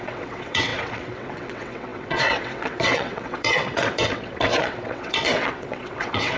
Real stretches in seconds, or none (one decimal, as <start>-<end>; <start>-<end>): none